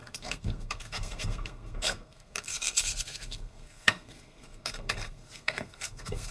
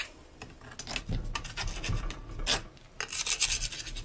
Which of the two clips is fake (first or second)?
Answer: first